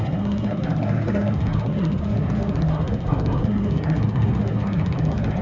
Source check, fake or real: fake